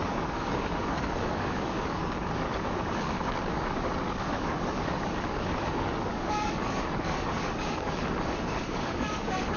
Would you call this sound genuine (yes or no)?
no